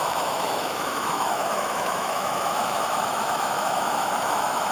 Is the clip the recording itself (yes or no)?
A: no